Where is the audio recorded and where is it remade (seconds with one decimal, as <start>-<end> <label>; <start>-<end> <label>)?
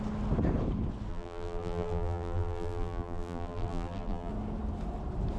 0.0-1.1 recorded; 1.1-4.3 remade; 4.3-5.4 recorded